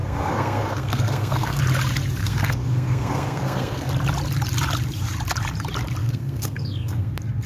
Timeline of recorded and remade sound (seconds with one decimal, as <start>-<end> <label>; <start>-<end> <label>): 0.0-1.6 remade; 1.6-2.2 recorded; 2.2-3.9 remade; 3.9-6.0 recorded; 6.0-7.1 remade; 7.1-7.5 recorded